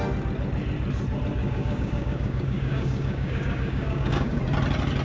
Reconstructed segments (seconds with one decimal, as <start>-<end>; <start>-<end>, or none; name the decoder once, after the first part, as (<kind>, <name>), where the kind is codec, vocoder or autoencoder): 1.4-4.4 (codec, DAC)